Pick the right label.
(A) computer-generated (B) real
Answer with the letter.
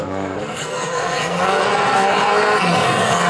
A